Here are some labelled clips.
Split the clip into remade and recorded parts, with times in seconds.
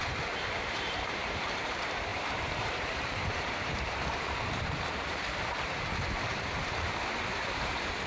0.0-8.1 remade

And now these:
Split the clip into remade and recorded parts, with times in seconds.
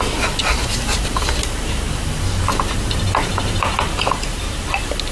0.0-0.4 recorded; 0.4-2.2 remade; 2.2-3.3 recorded; 3.3-5.1 remade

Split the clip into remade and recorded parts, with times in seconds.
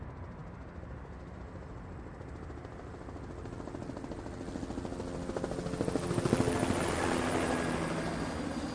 0.0-8.7 recorded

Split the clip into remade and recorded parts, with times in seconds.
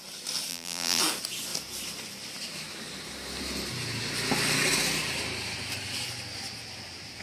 0.0-0.5 recorded; 0.5-1.0 remade; 1.0-7.2 recorded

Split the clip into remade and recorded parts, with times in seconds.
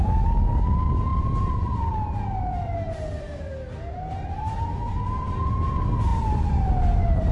0.0-1.1 recorded; 1.1-5.5 remade; 5.5-6.1 recorded; 6.1-7.3 remade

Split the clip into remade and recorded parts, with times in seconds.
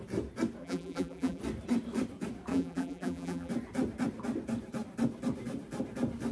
0.0-0.6 recorded; 0.6-1.4 remade; 1.4-2.5 recorded; 2.5-3.5 remade; 3.5-6.3 recorded